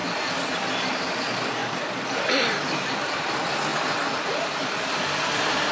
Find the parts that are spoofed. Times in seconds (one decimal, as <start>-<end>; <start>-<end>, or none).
0.7-3.7; 4.6-5.7

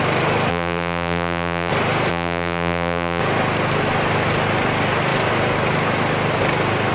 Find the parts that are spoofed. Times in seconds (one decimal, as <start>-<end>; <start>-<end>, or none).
0.5-1.7; 2.1-3.2

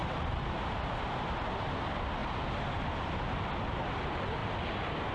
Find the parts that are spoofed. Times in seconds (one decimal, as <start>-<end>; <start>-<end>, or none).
0.0-1.5; 2.2-2.8

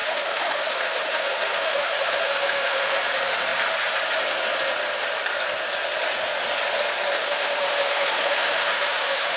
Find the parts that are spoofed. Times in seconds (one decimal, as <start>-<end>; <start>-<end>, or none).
0.0-3.0; 7.2-9.4

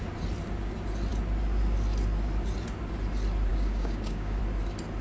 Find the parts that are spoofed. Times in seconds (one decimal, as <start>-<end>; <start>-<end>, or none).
3.5-4.4

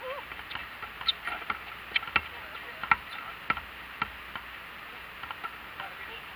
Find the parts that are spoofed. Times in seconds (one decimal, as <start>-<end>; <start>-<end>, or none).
none

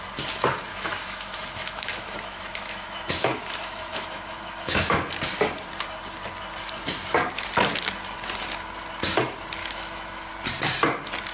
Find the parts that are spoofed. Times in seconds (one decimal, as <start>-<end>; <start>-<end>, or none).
0.7-5.1; 9.6-10.3

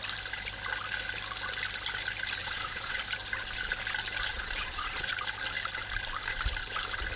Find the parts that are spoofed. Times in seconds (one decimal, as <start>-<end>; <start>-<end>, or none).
2.4-3.0; 4.3-5.1